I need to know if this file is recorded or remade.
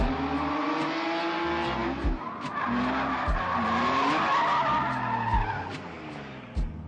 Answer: recorded